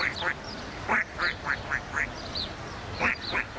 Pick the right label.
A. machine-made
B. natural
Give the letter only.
A